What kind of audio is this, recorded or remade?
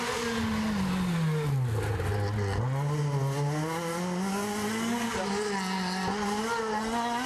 recorded